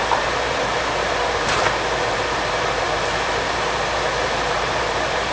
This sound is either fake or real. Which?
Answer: fake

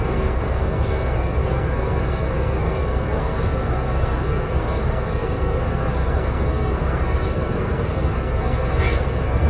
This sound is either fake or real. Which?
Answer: fake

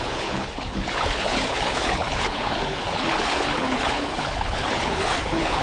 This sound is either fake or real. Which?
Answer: fake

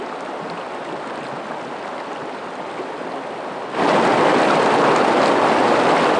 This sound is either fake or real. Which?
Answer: real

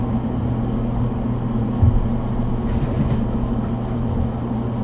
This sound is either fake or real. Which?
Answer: real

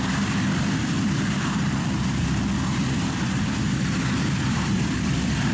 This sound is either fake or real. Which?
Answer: fake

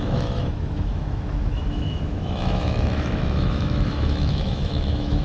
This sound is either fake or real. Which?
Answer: fake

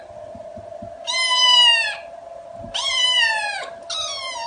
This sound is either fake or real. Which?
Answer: real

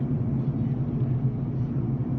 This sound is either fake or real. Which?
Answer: real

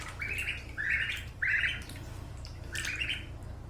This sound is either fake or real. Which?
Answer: real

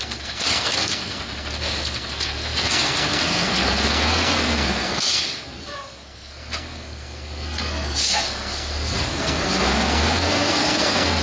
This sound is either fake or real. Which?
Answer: fake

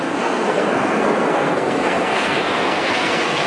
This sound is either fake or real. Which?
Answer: fake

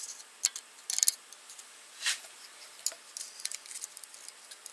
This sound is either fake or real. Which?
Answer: real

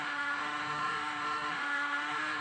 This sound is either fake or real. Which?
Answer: fake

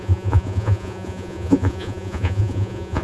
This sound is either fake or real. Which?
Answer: fake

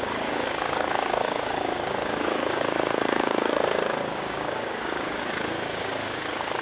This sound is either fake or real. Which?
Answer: fake